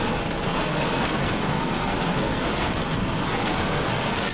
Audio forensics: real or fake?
fake